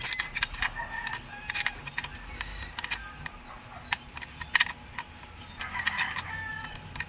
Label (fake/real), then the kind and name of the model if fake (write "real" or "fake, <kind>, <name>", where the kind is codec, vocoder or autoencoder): real